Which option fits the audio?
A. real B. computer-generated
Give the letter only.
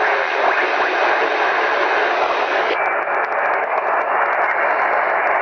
A